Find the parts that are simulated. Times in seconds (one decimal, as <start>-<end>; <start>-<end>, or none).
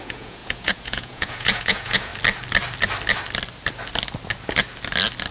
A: 0.0-2.1